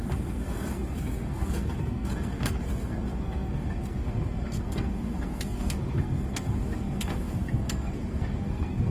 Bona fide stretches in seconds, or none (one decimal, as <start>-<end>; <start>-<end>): none